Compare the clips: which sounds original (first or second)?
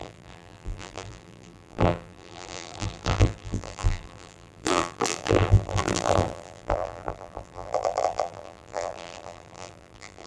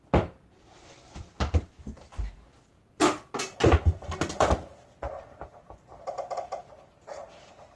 second